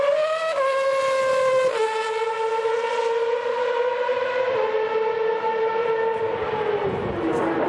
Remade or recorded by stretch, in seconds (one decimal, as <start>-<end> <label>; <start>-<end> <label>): 0.0-7.7 recorded